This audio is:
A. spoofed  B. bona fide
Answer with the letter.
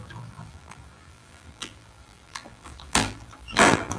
A